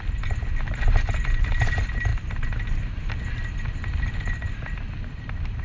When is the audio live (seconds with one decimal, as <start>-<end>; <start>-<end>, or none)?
0.0-5.6

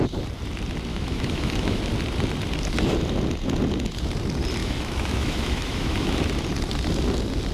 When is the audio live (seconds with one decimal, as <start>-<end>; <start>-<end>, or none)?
0.0-0.9; 1.8-4.6; 6.3-7.5